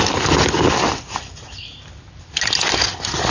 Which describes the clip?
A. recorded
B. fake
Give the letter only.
A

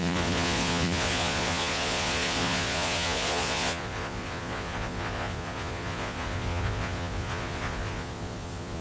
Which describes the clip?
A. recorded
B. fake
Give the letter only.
B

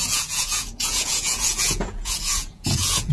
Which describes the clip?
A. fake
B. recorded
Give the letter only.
A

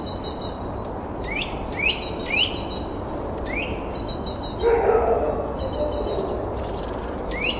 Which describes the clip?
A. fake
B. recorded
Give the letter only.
B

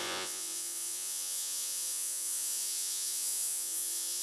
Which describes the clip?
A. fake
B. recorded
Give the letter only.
A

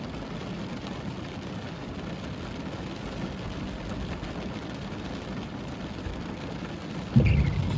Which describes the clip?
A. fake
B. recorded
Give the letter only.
B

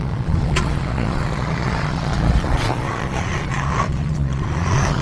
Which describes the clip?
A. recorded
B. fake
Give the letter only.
B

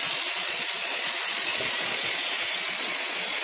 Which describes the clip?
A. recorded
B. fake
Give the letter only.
B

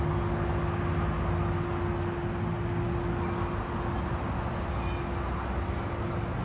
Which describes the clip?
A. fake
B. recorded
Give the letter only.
B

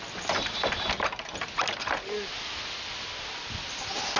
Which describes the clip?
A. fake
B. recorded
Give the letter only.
B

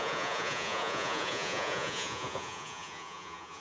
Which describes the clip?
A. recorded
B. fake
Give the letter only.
B